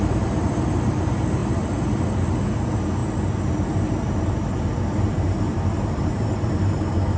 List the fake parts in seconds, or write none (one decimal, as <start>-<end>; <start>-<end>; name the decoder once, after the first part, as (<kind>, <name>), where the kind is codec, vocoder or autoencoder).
0.0-1.4 (vocoder, BigVGAN v2); 2.6-7.2